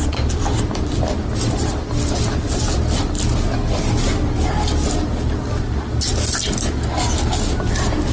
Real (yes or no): yes